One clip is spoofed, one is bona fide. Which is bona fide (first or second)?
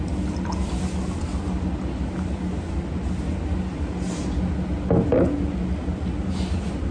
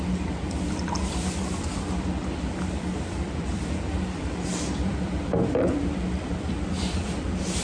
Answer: first